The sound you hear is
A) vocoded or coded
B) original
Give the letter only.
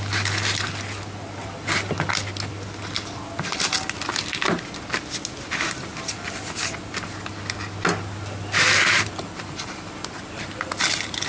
B